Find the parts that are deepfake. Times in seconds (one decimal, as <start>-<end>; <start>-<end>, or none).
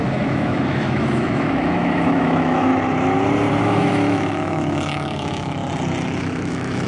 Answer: 0.0-2.7; 3.6-5.6; 6.2-6.9